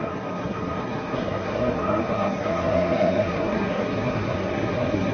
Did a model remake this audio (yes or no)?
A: yes